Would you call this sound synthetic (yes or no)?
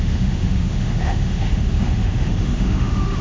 yes